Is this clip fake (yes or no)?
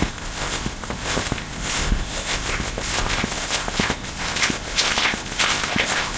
yes